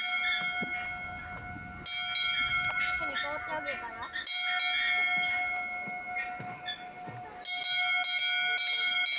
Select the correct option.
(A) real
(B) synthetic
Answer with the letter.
A